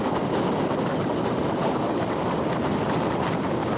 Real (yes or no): yes